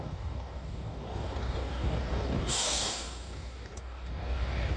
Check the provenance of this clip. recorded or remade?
remade